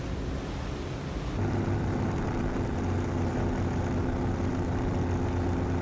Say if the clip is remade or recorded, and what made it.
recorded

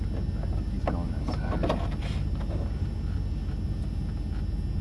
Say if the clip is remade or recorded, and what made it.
recorded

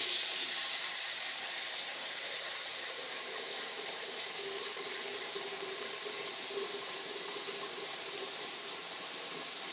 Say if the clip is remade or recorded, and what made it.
remade, vocoder, BigVGAN v2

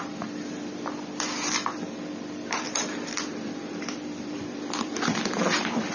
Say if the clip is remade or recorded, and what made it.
remade, vocoder, BigVGAN v2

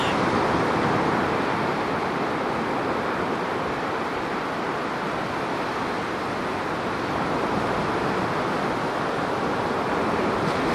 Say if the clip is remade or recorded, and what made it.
recorded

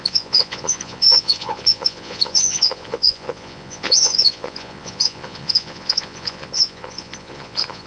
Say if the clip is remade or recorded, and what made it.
remade, vocoder, Vocos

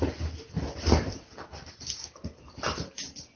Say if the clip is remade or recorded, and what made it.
recorded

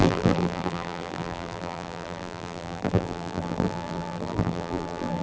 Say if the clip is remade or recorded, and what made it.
remade, vocoder, BigVGAN v2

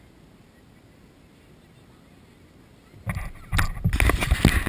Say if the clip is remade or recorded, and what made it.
recorded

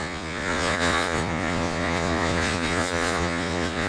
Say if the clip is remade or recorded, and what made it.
remade, vocoder, Vocos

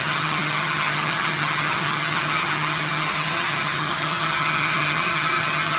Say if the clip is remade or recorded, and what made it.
remade, vocoder, HiFi-GAN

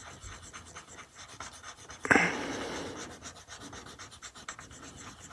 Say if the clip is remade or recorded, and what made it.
recorded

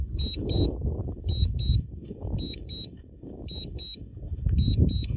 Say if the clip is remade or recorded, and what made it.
remade, codec, DAC